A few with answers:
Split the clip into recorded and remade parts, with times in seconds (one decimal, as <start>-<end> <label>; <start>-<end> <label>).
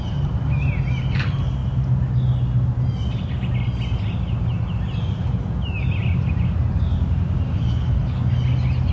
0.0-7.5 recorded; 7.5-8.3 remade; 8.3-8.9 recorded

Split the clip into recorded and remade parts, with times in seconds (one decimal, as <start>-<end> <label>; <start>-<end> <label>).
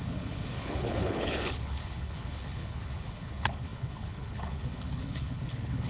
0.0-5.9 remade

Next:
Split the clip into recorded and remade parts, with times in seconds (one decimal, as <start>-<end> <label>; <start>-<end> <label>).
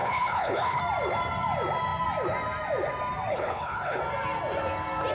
0.0-0.8 remade; 0.8-3.3 recorded; 3.3-4.0 remade; 4.0-5.1 recorded